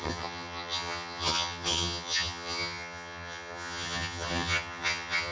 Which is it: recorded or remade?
remade